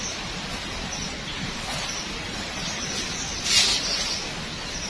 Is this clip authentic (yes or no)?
yes